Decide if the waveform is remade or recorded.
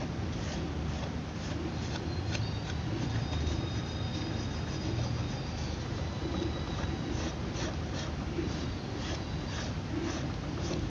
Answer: recorded